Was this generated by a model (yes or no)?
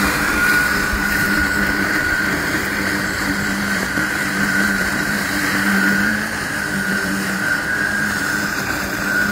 yes